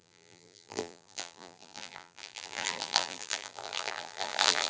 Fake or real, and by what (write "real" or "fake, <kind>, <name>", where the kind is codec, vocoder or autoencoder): fake, vocoder, BigVGAN v2